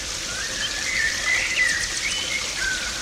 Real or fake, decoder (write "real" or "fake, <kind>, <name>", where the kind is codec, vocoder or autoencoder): real